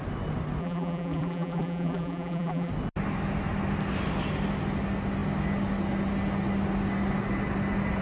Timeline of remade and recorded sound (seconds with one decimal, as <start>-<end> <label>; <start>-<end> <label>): 0.0-0.6 recorded; 0.6-2.7 remade; 2.7-8.0 recorded